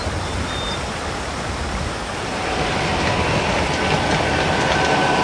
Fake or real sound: real